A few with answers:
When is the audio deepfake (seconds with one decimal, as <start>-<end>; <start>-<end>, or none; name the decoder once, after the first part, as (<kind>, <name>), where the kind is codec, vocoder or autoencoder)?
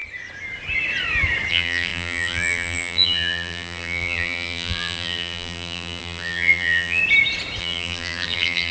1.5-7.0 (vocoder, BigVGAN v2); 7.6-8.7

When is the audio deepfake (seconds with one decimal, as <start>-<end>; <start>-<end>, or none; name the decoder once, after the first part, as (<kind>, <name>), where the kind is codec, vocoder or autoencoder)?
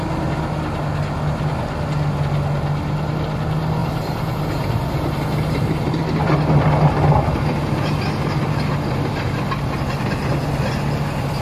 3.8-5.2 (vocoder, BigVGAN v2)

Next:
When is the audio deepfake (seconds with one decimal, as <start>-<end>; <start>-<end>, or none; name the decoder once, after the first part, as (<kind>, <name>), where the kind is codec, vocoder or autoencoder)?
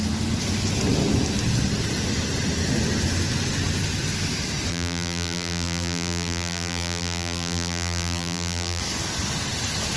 4.7-8.8 (vocoder, BigVGAN v2)